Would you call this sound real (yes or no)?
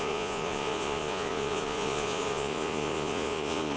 no